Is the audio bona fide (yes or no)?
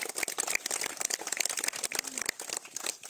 yes